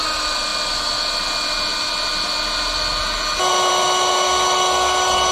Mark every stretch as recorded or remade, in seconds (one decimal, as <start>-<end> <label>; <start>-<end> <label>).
0.0-5.3 recorded